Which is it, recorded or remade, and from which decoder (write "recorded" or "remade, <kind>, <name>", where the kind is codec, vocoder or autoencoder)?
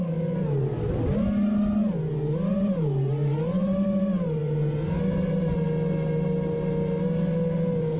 recorded